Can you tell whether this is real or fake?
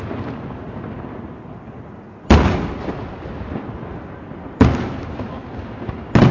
real